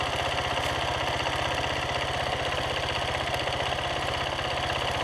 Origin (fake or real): real